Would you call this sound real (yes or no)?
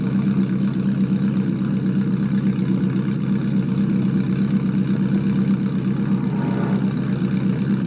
yes